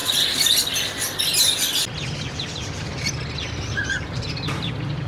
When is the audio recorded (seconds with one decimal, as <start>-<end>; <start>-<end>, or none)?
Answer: none